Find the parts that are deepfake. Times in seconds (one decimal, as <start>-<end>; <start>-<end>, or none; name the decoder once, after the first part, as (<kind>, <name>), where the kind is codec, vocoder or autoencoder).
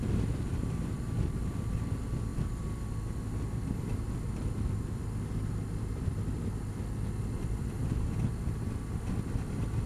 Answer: 0.5-1.0 (vocoder, BigVGAN v2)